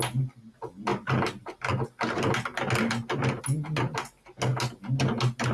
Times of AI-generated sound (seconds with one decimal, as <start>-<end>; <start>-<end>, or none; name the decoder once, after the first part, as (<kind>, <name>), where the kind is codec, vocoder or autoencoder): none